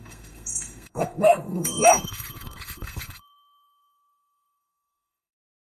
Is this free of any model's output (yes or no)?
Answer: no